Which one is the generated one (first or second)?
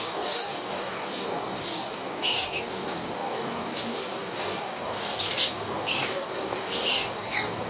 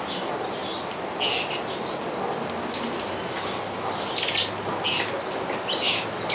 first